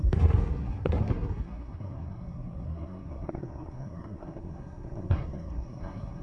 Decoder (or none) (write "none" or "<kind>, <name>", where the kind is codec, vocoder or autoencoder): codec, SNAC